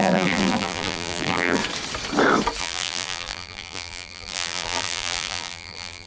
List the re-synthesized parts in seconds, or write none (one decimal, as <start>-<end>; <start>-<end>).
0.0-1.6; 2.6-6.1